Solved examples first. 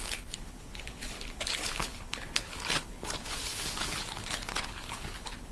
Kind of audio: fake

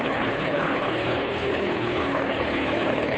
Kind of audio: fake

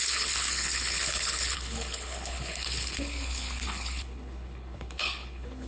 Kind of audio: fake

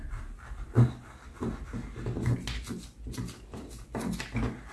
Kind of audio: real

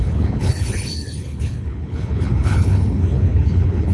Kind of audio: fake